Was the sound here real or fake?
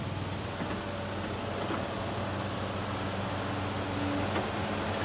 real